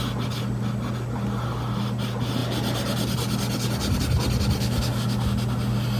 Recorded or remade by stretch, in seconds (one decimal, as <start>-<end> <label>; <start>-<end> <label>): 0.0-6.0 recorded